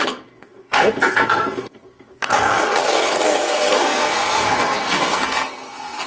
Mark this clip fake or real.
fake